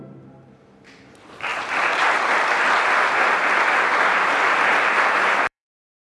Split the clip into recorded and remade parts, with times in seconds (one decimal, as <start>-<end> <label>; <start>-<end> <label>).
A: 0.0-1.5 recorded; 1.5-2.1 remade; 2.1-3.9 recorded; 3.9-6.0 remade